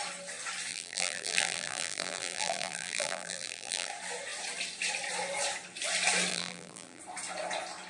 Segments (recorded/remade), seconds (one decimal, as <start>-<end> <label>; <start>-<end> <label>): 0.0-0.7 recorded; 0.7-3.9 remade; 3.9-6.3 recorded; 6.3-7.0 remade; 7.0-7.9 recorded